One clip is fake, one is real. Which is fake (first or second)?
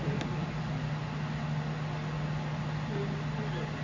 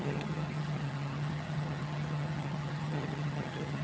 second